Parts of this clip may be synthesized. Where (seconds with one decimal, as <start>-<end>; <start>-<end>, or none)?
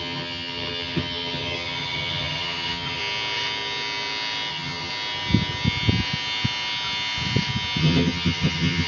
0.0-3.0; 4.5-4.9; 7.8-8.9